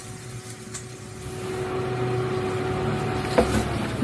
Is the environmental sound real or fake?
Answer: real